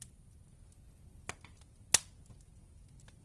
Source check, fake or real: real